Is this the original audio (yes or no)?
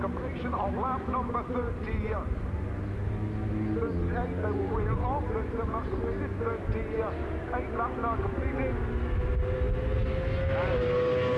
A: yes